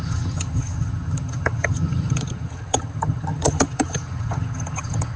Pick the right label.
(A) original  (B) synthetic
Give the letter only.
B